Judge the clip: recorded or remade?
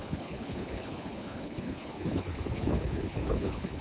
remade